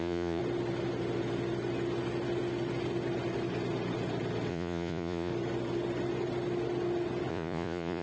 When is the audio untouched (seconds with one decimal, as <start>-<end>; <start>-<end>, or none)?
0.4-4.5; 5.3-7.3